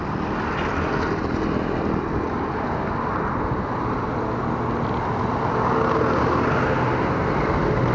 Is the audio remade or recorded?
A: recorded